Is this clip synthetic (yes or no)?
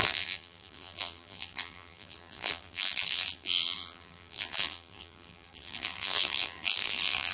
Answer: yes